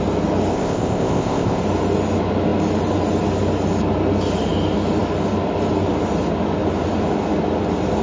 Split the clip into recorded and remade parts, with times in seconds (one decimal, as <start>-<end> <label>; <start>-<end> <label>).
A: 0.0-0.5 recorded; 0.5-1.6 remade; 1.6-8.0 recorded